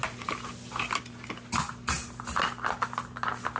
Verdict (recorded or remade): recorded